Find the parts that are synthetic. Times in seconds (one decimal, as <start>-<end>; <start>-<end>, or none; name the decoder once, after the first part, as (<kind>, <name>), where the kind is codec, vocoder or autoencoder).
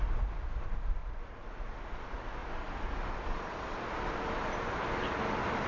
none